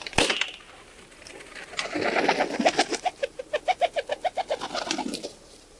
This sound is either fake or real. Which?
real